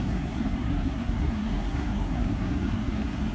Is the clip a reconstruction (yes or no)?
yes